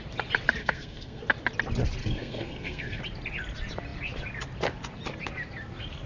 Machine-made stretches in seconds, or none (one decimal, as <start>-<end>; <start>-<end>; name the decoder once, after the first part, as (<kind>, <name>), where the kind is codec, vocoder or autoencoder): 0.6-1.2 (codec, SNAC); 2.0-3.0